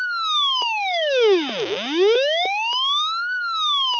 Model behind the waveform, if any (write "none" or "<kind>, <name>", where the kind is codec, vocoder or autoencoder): codec, DAC